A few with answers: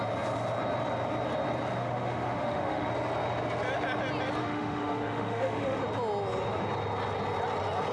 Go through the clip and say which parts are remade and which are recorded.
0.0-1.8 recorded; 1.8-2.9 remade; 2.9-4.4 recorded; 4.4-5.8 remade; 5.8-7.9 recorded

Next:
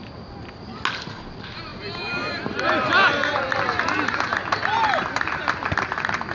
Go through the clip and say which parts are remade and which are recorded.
0.0-6.3 recorded

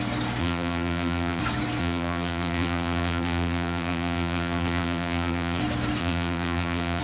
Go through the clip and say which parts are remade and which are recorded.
0.0-0.4 recorded; 0.4-1.4 remade; 1.4-1.8 recorded; 1.8-5.6 remade; 5.6-6.0 recorded; 6.0-7.0 remade

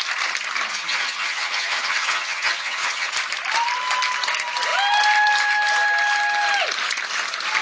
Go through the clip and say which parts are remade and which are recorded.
0.0-0.7 recorded; 0.7-3.1 remade; 3.1-7.6 recorded

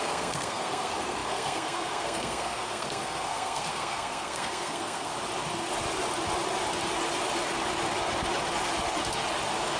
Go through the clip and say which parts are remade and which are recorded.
0.0-5.1 remade; 5.1-9.8 recorded

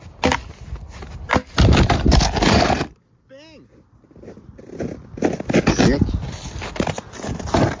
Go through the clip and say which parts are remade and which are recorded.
0.0-7.8 recorded

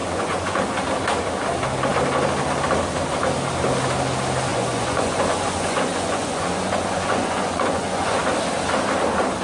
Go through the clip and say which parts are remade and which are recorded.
0.0-0.6 remade; 0.6-4.5 recorded; 4.5-8.2 remade; 8.2-9.4 recorded

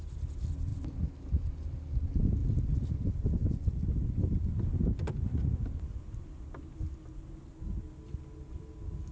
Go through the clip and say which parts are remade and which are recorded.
0.0-9.1 recorded